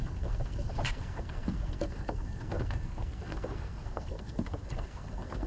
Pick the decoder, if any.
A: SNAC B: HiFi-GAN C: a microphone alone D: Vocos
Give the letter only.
A